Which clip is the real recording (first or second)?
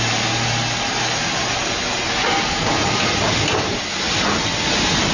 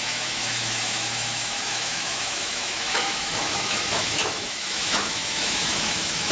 first